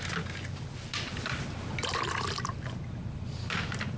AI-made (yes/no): no